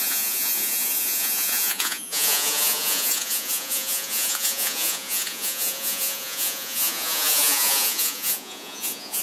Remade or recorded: remade